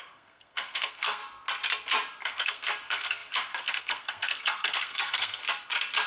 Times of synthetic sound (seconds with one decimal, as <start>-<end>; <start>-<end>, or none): 0.0-1.2; 2.2-5.4